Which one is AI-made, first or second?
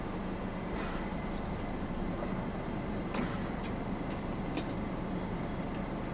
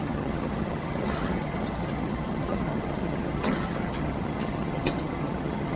second